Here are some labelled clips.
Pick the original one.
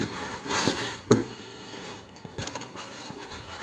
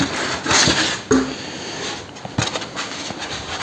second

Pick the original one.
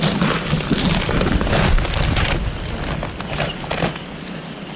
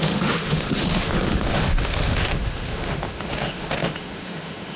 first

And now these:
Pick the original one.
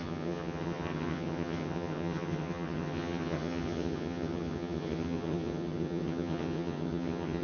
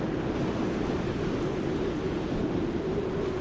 second